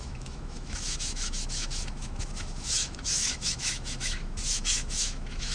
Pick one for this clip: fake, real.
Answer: fake